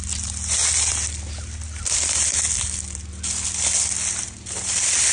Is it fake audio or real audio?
real